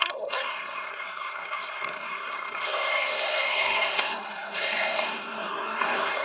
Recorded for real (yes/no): no